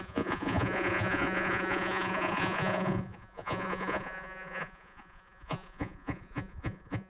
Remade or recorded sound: remade